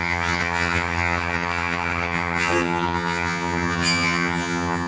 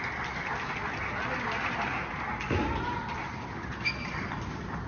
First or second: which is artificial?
first